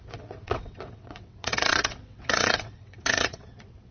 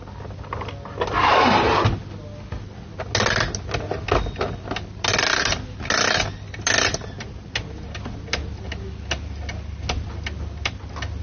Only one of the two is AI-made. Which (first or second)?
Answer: first